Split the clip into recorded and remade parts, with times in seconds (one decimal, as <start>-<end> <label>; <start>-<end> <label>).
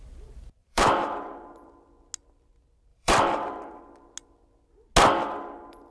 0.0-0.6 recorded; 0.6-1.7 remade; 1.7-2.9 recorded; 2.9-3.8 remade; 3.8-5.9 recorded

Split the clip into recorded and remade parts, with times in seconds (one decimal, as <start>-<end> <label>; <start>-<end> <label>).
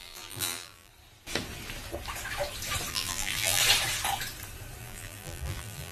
0.0-0.9 remade; 0.9-2.9 recorded; 2.9-3.6 remade; 3.6-4.8 recorded; 4.8-5.9 remade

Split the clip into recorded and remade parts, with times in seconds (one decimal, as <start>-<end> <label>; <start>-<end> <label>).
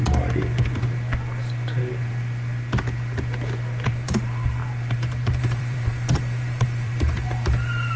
0.0-3.9 recorded; 3.9-8.0 remade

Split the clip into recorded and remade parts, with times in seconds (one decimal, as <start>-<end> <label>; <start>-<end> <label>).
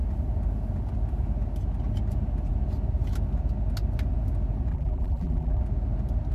0.0-4.7 recorded; 4.7-5.6 remade; 5.6-6.3 recorded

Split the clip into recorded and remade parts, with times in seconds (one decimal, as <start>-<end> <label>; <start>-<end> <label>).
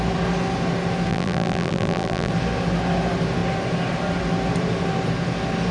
0.0-1.1 recorded; 1.1-2.3 remade; 2.3-5.7 recorded